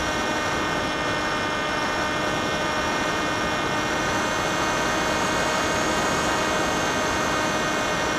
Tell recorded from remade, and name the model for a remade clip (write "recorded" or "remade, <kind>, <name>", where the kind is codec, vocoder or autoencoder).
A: recorded